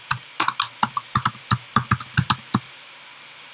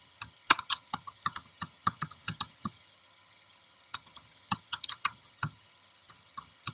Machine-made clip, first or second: second